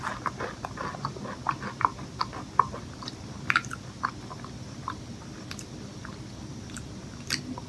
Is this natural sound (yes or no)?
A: yes